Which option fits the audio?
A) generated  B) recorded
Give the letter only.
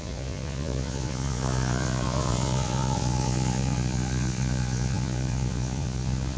A